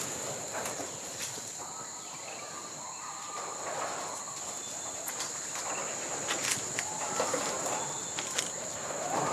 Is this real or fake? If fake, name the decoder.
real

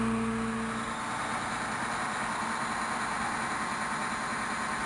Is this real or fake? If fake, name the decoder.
real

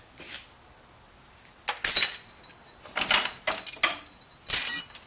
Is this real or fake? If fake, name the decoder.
real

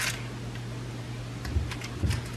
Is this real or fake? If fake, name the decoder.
real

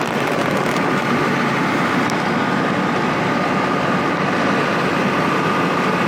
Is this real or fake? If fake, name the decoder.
real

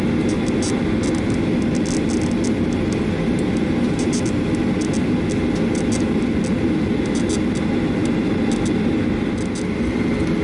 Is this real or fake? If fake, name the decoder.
real